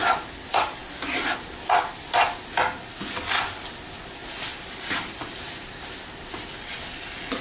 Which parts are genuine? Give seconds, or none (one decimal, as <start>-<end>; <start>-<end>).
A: 0.0-4.2; 6.0-7.4

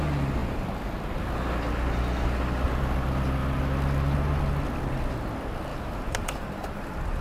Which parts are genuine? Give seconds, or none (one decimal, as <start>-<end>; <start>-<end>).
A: 0.0-5.7; 6.8-7.2

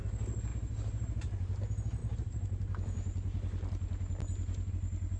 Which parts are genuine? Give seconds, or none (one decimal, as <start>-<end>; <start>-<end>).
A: 0.0-0.5; 1.6-5.2

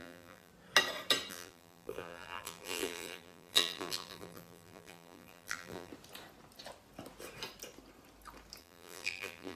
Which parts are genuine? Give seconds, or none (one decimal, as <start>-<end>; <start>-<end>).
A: 0.5-1.3; 5.9-8.6

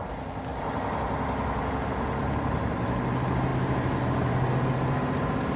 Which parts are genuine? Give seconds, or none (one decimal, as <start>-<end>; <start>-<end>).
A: 0.0-5.6

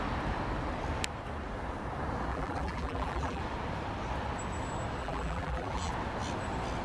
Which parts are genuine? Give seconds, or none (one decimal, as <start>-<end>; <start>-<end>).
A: 0.0-2.3; 3.4-5.0; 5.9-6.8